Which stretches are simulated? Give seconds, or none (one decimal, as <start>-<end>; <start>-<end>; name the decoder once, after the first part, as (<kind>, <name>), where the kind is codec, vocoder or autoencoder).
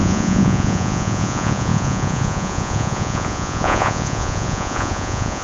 0.0-5.4 (vocoder, Vocos)